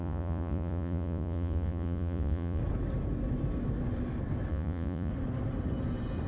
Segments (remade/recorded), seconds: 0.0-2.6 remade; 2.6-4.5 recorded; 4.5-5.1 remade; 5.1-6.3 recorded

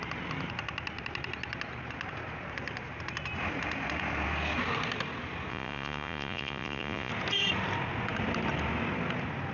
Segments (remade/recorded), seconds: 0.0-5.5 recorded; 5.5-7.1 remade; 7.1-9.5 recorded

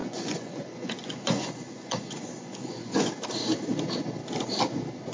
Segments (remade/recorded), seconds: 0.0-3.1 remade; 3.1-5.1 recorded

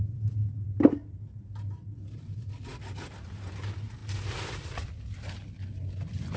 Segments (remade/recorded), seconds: 0.0-6.4 recorded

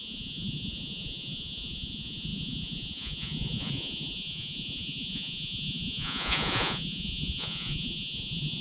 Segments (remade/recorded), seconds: 0.0-8.6 remade